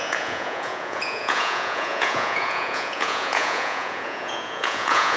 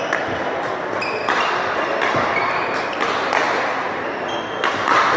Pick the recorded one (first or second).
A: second